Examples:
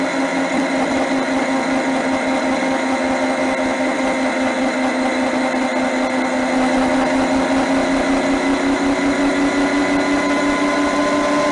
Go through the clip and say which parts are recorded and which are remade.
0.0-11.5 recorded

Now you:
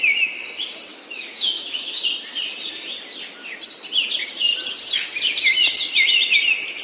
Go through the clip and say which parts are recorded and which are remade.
0.0-0.9 recorded; 0.9-2.0 remade; 2.0-6.8 recorded